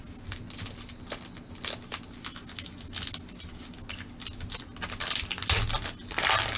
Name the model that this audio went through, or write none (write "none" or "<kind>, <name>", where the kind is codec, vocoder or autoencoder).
none